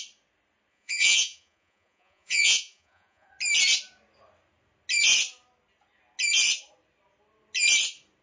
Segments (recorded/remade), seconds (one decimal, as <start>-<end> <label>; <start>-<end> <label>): 0.0-0.7 recorded; 0.7-3.3 remade; 3.3-8.2 recorded